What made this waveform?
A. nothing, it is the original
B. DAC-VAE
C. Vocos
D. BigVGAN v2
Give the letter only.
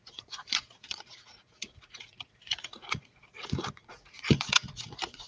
C